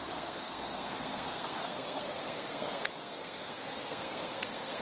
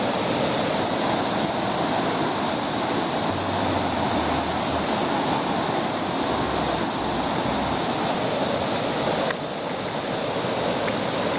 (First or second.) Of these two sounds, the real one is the second